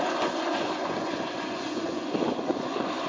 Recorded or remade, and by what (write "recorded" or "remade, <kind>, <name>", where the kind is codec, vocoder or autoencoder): remade, vocoder, Vocos